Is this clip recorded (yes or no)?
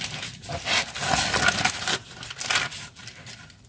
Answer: yes